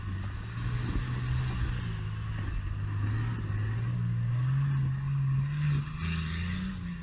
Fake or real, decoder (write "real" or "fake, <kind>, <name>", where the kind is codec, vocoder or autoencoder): real